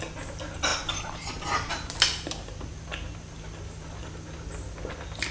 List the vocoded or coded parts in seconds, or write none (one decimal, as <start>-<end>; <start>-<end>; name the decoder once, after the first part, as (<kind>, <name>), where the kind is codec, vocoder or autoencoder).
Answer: none